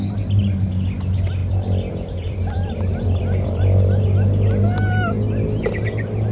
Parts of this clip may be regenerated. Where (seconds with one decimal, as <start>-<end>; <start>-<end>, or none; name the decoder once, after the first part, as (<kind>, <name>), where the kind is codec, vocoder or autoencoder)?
1.4-4.0 (vocoder, BigVGAN v2)